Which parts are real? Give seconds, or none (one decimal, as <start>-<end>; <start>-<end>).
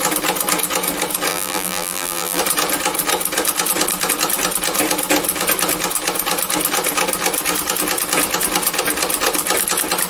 0.0-1.3; 2.4-10.1